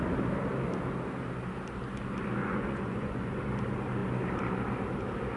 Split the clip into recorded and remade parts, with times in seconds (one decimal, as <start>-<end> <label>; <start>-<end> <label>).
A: 0.0-2.4 recorded; 2.4-3.4 remade; 3.4-5.4 recorded